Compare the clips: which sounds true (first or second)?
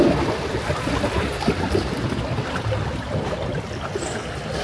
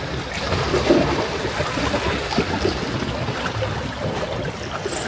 second